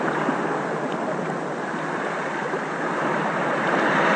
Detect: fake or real real